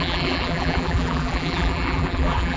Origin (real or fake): fake